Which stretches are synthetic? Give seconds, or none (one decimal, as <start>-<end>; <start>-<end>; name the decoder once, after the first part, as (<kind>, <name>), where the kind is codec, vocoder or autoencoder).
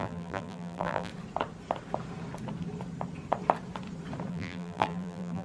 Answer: 0.0-1.1 (vocoder, BigVGAN v2); 4.3-5.4